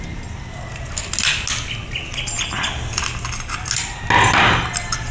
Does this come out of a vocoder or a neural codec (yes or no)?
no